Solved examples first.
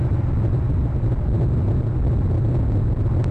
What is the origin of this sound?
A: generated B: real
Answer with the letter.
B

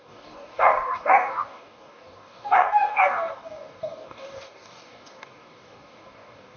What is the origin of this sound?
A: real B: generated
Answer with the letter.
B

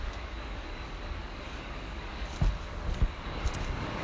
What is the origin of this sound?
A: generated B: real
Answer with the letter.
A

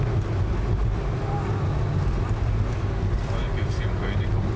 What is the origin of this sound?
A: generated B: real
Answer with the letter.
B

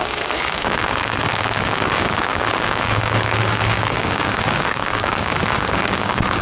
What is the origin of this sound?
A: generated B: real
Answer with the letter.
A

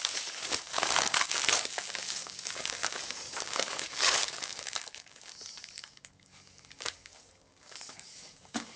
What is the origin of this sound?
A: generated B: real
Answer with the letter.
A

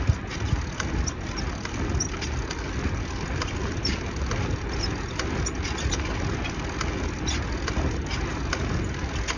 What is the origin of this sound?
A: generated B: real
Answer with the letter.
B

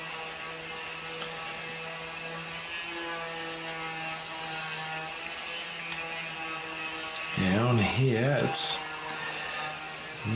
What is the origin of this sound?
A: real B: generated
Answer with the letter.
A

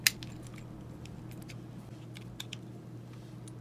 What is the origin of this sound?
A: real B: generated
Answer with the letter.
A